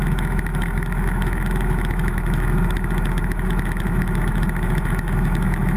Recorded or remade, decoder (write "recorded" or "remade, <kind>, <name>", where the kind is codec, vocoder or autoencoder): remade, autoencoder, DAC-VAE